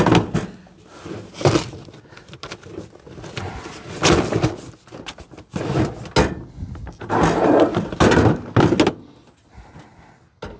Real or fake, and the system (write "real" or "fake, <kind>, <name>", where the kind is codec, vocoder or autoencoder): real